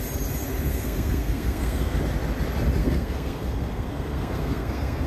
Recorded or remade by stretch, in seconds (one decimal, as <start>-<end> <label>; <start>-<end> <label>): 0.0-0.7 recorded; 0.7-2.0 remade; 2.0-2.8 recorded; 2.8-5.1 remade